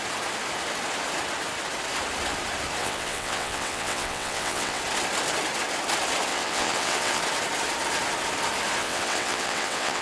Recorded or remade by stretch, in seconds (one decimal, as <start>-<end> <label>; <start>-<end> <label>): 0.0-2.8 recorded; 2.8-4.8 remade; 4.8-6.3 recorded; 6.3-7.2 remade; 7.2-8.8 recorded; 8.8-10.0 remade